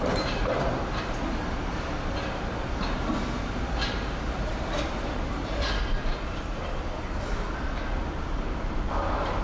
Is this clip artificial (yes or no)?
yes